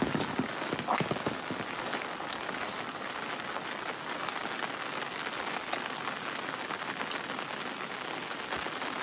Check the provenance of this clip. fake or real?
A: real